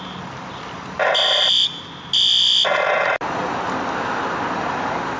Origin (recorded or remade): recorded